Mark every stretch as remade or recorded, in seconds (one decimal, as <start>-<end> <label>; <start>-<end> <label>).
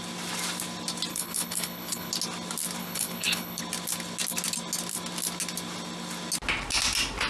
0.0-1.1 recorded; 1.1-2.1 remade; 2.1-2.8 recorded; 2.8-3.6 remade; 3.6-7.3 recorded